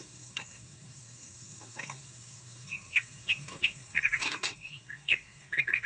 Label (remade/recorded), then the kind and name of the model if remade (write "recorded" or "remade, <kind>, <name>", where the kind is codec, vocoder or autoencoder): remade, codec, SNAC